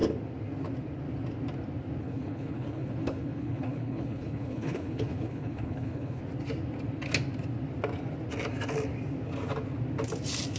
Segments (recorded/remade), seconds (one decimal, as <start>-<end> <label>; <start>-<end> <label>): 0.0-2.0 recorded; 2.0-6.2 remade; 6.2-10.6 recorded